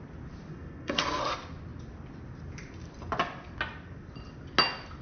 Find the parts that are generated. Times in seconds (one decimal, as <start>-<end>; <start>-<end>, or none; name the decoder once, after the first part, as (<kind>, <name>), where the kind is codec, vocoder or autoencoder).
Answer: 0.5-1.2 (codec, SNAC)